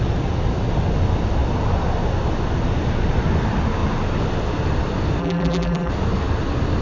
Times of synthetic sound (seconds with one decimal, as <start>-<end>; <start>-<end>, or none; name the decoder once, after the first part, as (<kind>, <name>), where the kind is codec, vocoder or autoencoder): 5.2-5.9 (vocoder, BigVGAN v2)